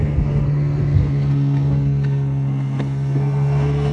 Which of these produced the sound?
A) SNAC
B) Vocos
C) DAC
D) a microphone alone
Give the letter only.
A